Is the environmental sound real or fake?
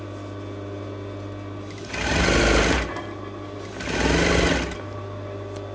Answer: real